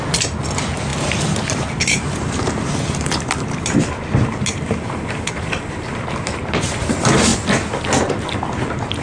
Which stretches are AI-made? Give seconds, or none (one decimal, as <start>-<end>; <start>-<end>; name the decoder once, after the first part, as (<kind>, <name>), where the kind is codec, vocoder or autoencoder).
none